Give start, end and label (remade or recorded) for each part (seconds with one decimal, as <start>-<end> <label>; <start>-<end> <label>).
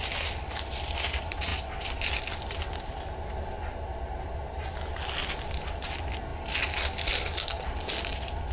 0.0-8.5 recorded